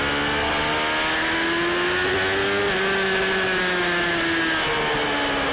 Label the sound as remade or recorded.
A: recorded